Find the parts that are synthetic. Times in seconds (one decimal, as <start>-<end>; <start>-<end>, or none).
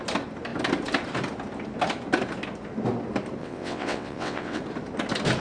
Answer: 3.4-4.6